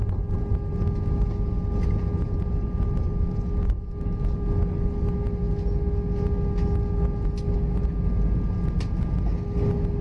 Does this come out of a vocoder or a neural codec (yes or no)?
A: no